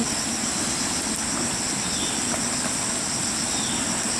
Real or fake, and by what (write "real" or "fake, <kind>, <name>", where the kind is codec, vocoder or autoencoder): real